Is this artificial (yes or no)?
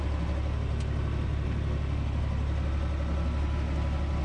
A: no